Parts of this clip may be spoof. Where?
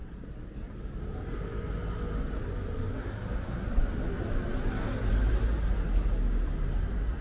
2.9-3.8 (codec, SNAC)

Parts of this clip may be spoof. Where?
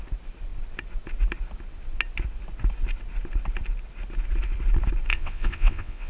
5.1-6.1 (vocoder, WaveNeXt)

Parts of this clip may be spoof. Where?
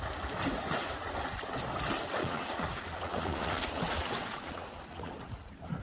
2.2-5.8 (vocoder, Vocos)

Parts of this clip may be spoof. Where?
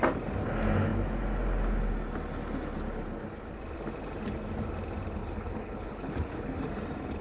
5.2-6.6 (codec, HILCodec)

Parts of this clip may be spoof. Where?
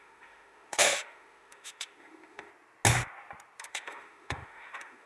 0.0-2.5 (autoencoder, DAC-VAE); 3.6-5.1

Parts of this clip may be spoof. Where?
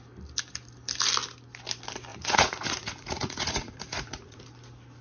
2.1-4.4 (vocoder, Vocos)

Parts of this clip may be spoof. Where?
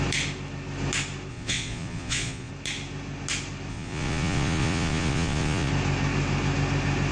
1.3-2.5 (vocoder, Vocos); 3.7-5.7